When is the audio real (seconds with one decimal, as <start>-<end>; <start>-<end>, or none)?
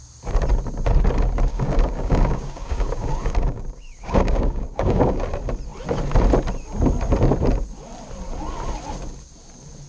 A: 0.0-1.5; 5.2-9.9